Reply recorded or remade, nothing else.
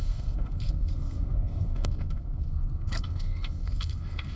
remade